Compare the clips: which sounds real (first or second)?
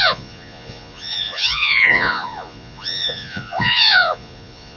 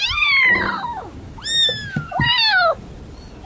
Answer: second